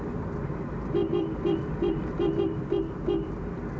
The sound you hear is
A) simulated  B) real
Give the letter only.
B